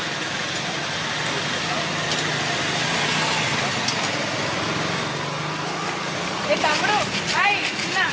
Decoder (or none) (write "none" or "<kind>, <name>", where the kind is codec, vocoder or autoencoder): none